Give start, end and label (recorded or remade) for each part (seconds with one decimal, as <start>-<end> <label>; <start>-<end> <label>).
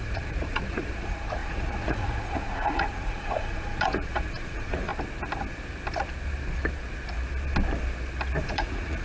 0.0-4.9 remade; 4.9-8.4 recorded; 8.4-9.0 remade